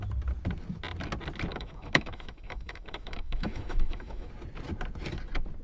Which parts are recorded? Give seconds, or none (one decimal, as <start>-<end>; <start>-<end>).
0.0-1.5; 4.3-5.6